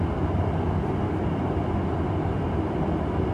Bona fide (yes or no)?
yes